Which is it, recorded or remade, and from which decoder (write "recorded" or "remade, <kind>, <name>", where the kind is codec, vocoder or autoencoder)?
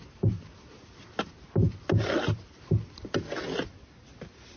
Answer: recorded